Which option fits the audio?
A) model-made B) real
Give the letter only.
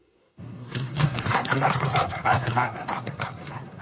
A